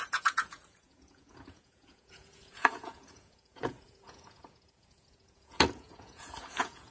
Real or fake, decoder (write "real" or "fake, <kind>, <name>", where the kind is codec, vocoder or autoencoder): fake, vocoder, Vocos